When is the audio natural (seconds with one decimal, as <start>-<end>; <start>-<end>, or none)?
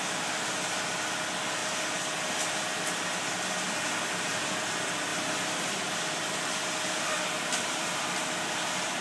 0.0-1.6; 4.5-5.1